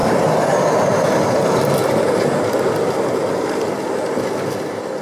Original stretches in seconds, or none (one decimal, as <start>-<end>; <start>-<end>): 0.0-5.0